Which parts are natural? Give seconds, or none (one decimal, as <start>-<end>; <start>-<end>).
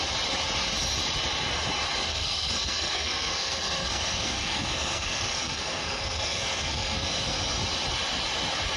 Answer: 0.0-2.1; 7.4-8.8